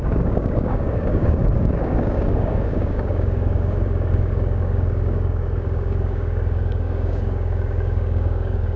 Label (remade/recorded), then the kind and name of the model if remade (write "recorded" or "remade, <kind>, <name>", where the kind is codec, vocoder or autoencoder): remade, codec, DAC